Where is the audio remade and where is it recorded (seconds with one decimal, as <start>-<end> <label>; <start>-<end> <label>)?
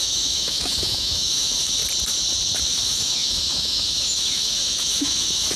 0.0-1.8 remade; 1.8-2.6 recorded; 2.6-5.6 remade